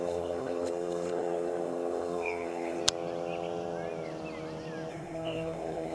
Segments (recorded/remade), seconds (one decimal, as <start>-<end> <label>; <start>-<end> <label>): 0.0-2.8 remade; 2.8-4.9 recorded; 4.9-5.9 remade